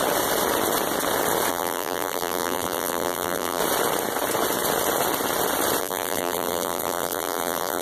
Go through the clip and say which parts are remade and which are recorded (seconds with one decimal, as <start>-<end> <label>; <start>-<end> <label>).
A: 0.0-1.5 recorded; 1.5-3.6 remade; 3.6-5.8 recorded; 5.8-7.8 remade